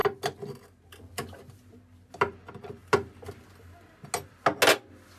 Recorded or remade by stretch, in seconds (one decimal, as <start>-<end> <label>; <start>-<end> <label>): 0.0-5.2 recorded